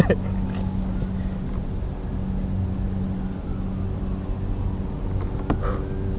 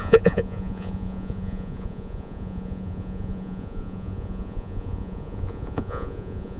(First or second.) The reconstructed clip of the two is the second